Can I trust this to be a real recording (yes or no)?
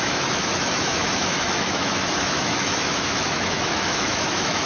no